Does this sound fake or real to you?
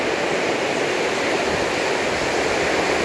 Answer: real